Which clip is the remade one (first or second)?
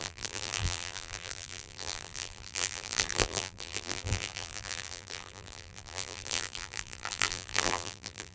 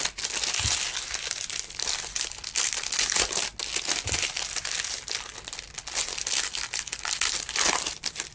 first